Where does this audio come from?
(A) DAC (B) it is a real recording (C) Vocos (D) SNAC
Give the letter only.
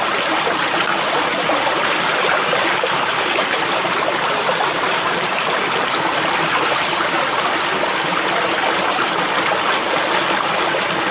B